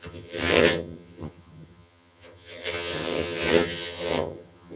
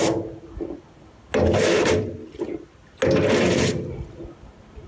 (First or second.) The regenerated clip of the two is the first